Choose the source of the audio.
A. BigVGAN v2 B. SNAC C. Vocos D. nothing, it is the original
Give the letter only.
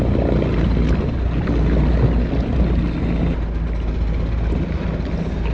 D